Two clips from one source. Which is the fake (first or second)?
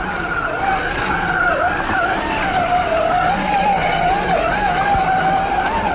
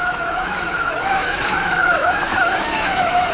second